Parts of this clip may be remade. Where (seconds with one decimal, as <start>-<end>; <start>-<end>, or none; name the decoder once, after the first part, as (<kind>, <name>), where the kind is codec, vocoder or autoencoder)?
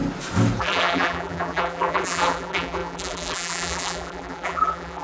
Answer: 0.6-5.0 (vocoder, BigVGAN v2)